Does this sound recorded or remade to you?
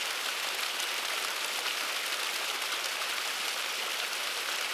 recorded